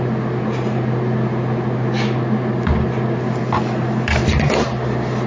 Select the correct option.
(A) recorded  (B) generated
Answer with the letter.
A